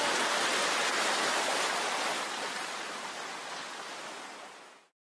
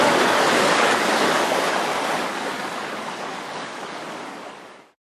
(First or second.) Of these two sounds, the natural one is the first